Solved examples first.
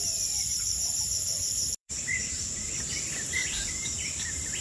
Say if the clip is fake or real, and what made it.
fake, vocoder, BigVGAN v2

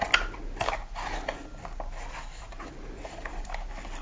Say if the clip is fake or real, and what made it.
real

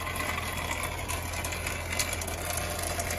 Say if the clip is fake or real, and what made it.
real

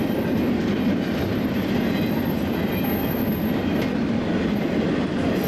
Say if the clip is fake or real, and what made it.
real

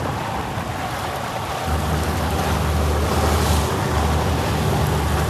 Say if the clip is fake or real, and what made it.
real